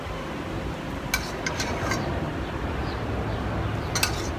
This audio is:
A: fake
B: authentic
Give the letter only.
B